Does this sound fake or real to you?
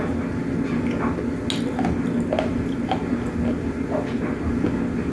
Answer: real